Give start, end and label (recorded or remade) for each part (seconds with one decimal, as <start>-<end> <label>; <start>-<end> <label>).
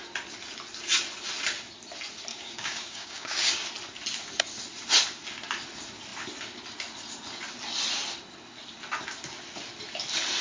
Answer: 0.0-2.3 recorded; 2.3-3.7 remade; 3.7-10.4 recorded